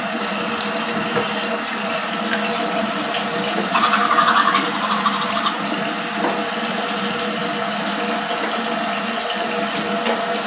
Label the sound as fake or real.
real